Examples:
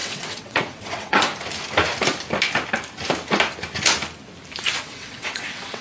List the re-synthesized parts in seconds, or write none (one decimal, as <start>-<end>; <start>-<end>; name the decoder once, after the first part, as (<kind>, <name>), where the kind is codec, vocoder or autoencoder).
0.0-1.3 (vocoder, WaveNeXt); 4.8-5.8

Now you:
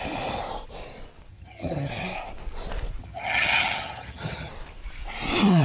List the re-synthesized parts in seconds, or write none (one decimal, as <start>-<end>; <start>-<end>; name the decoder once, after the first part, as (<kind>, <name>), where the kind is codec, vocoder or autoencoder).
1.3-1.9 (vocoder, HiFi-GAN); 3.0-4.5

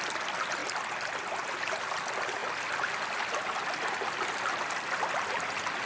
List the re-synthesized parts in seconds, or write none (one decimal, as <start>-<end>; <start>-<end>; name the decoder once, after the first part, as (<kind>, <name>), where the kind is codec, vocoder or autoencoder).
none

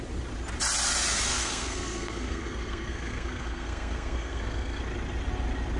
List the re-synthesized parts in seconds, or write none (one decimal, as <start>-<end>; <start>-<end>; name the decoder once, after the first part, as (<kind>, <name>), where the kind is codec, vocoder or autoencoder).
1.3-4.8 (codec, SNAC)

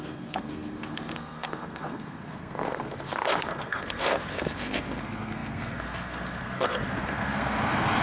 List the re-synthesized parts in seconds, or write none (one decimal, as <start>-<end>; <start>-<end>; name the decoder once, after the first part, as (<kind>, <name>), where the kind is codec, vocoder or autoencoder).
0.0-8.0 (codec, SNAC)

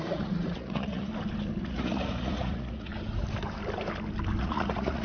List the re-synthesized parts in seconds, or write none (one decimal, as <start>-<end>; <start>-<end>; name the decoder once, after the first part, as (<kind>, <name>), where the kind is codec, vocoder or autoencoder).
0.0-1.1 (vocoder, Vocos); 1.6-2.9; 4.4-5.0

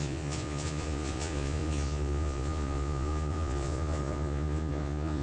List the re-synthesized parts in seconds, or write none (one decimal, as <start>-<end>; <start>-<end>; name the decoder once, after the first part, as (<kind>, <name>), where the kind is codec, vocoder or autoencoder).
0.0-5.2 (vocoder, Vocos)